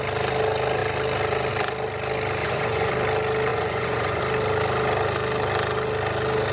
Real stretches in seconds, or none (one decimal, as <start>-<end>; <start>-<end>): 0.0-2.4; 2.9-3.5; 4.2-6.5